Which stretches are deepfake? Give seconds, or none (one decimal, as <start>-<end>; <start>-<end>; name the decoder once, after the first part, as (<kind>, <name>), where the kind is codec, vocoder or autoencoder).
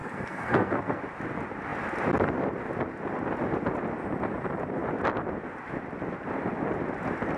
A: 0.0-1.0 (codec, SNAC)